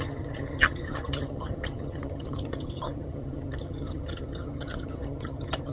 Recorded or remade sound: remade